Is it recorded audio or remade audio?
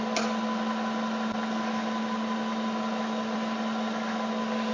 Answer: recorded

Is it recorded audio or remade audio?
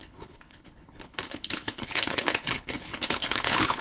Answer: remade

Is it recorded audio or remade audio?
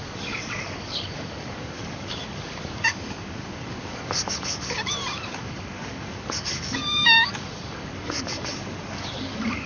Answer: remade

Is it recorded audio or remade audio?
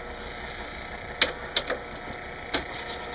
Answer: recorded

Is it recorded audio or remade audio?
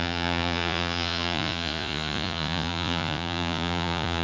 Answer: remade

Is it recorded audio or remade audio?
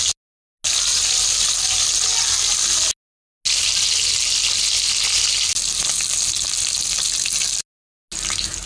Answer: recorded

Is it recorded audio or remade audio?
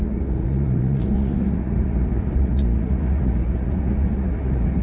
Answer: remade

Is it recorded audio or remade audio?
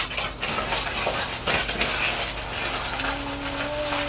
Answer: recorded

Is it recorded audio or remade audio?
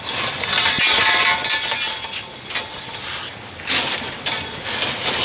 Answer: recorded